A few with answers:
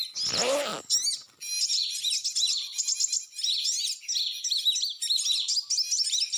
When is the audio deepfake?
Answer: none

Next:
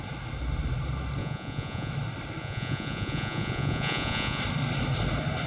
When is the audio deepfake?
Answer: 1.2-1.9 (vocoder, Vocos); 2.4-4.4